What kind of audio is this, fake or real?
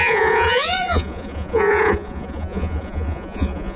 fake